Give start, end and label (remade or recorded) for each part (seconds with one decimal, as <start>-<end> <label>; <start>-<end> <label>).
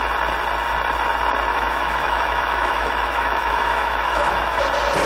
0.0-1.5 recorded; 1.5-4.6 remade; 4.6-5.1 recorded